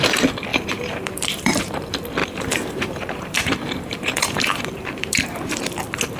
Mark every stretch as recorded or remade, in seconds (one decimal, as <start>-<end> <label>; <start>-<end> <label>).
0.0-0.5 recorded; 0.5-1.7 remade; 1.7-2.2 recorded; 2.2-5.6 remade; 5.6-6.2 recorded